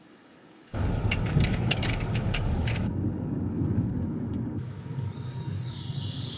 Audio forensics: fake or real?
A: fake